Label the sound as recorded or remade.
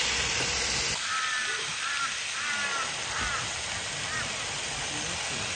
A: recorded